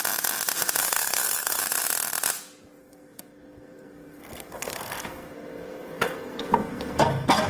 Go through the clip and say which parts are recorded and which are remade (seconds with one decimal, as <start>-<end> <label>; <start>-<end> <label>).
0.0-0.8 recorded; 0.8-1.6 remade; 1.6-2.8 recorded; 2.8-7.5 remade

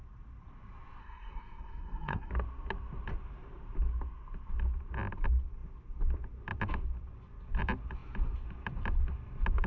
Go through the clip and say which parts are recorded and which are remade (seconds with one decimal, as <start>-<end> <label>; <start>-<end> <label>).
0.0-1.0 recorded; 1.0-2.3 remade; 2.3-9.7 recorded